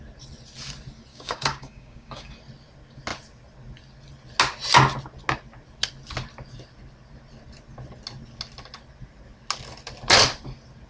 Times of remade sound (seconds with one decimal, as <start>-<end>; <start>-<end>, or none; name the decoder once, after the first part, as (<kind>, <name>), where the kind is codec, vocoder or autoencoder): 1.1-2.3 (codec, DAC)